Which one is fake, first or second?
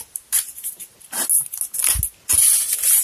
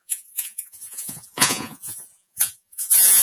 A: second